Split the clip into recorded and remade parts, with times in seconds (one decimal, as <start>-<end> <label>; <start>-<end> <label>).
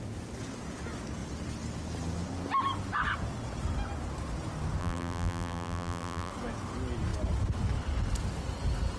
0.0-4.8 recorded; 4.8-6.3 remade; 6.3-9.0 recorded